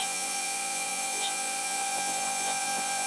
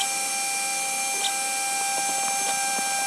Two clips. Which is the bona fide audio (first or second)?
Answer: second